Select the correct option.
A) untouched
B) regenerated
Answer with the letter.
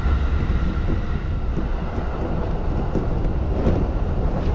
A